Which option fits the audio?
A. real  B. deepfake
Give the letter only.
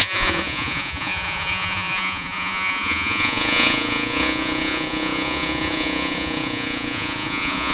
B